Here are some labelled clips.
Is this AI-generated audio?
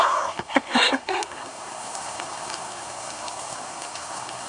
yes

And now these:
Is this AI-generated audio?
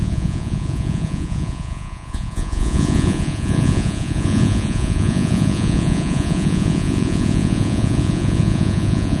yes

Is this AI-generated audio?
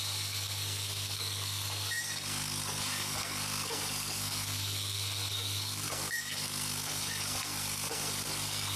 yes